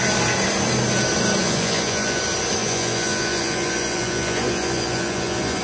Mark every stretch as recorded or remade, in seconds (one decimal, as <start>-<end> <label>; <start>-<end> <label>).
0.0-1.4 recorded; 1.4-2.2 remade; 2.2-2.6 recorded; 2.6-5.6 remade